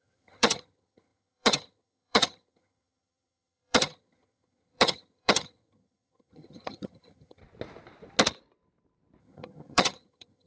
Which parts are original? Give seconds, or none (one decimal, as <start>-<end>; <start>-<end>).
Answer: 7.4-9.2